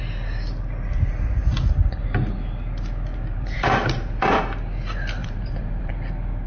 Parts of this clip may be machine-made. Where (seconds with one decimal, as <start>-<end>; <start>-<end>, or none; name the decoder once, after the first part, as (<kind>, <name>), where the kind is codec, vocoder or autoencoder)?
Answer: 3.1-4.4 (vocoder, BigVGAN v2); 5.2-5.9